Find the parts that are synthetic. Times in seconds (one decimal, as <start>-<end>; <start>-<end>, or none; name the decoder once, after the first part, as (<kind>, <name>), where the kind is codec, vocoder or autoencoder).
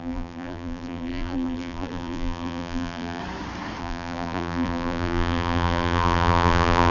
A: 0.0-3.2 (vocoder, BigVGAN v2); 3.8-6.9